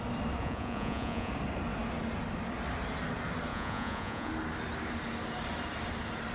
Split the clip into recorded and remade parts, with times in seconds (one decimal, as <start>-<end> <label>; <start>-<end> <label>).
0.0-0.4 recorded; 0.4-1.3 remade; 1.3-3.5 recorded; 3.5-4.3 remade; 4.3-6.3 recorded